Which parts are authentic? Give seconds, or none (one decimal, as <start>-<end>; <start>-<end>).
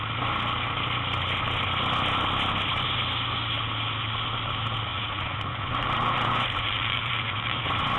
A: 0.0-4.9; 7.6-8.0